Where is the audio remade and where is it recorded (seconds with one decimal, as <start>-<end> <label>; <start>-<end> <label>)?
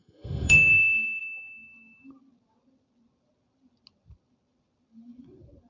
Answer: 0.0-1.2 remade; 1.2-5.7 recorded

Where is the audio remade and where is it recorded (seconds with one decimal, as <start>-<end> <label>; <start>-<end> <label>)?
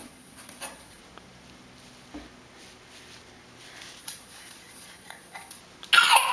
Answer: 0.0-1.0 remade; 1.0-4.0 recorded; 4.0-5.6 remade; 5.6-6.3 recorded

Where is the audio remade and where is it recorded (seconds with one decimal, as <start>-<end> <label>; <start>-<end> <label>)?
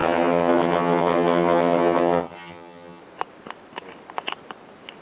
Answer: 0.0-3.0 remade; 3.0-5.0 recorded